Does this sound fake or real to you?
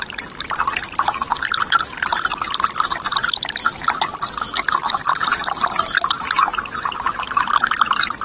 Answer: fake